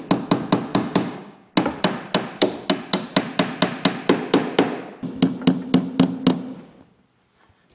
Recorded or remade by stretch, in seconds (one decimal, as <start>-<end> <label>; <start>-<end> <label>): 0.0-0.7 recorded; 0.7-1.5 remade; 1.5-7.7 recorded